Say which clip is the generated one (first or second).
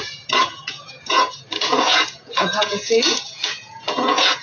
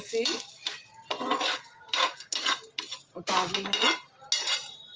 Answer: first